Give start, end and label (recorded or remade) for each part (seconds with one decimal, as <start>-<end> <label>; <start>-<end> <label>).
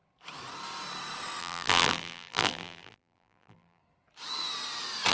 0.0-1.4 recorded; 1.4-3.8 remade; 3.8-5.1 recorded